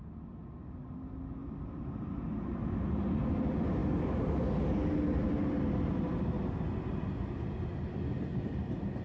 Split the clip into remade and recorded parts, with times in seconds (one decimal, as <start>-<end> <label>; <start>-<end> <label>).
0.0-9.0 recorded